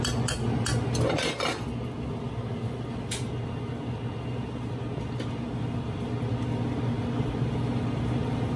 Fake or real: real